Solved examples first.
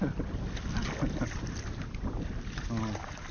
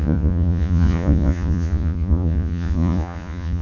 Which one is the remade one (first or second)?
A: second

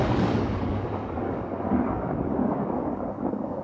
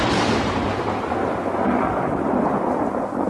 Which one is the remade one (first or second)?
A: first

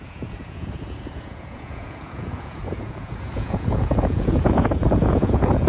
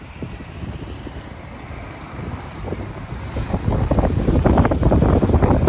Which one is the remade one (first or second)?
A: first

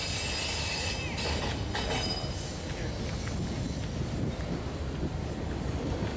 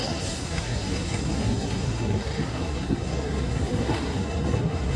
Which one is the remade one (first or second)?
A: second